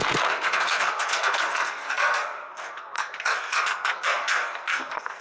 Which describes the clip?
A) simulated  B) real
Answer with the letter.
A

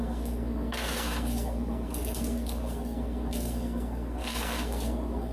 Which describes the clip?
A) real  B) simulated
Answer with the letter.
B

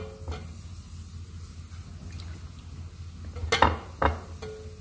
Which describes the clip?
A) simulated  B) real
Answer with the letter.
B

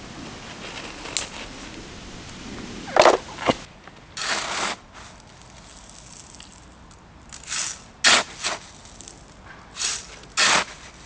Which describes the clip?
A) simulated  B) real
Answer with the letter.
B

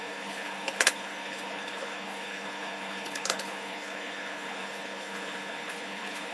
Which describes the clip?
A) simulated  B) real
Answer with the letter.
A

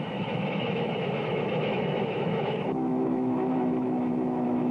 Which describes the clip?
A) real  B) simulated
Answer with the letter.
B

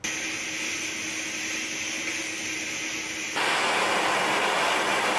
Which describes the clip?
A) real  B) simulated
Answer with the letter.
A